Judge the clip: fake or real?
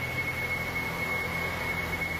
real